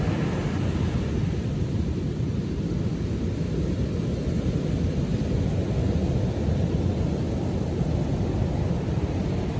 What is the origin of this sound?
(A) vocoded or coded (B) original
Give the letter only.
B